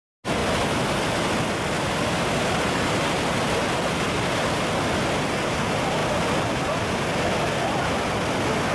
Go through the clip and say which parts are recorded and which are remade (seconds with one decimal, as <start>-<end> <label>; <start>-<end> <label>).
0.0-8.7 recorded